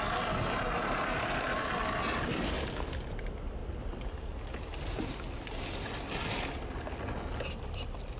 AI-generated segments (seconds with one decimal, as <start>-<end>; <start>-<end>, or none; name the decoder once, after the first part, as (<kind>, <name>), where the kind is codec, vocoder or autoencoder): none